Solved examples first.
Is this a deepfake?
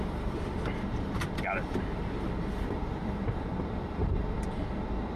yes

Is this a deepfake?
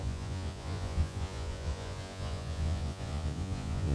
yes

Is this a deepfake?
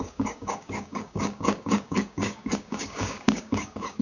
yes